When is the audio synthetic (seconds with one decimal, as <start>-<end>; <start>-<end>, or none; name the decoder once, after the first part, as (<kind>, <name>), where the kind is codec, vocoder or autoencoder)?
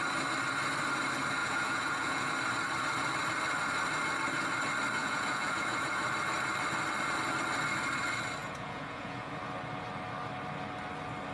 1.4-2.3 (vocoder, Vocos); 5.0-6.0; 8.4-9.4